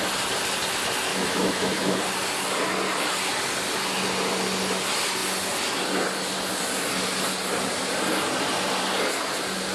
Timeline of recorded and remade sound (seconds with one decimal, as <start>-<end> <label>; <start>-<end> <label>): 0.0-1.1 recorded; 1.1-2.0 remade; 2.0-9.7 recorded